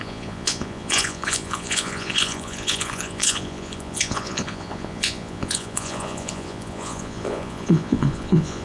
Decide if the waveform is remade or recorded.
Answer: remade